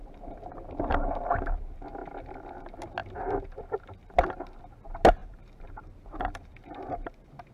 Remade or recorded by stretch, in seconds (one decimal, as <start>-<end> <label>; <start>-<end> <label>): 0.0-5.2 recorded; 5.2-7.5 remade